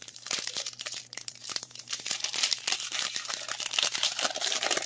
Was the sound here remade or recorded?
remade